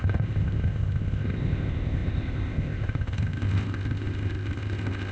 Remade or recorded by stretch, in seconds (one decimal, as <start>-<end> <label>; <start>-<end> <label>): 0.0-5.1 remade